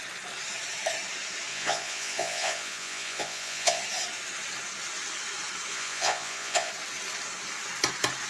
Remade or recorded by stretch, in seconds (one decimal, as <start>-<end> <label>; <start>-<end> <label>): 0.0-1.5 recorded; 1.5-3.8 remade; 3.8-5.7 recorded; 5.7-6.7 remade; 6.7-8.3 recorded